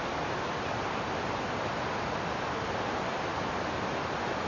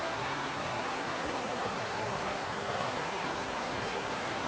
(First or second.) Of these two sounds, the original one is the first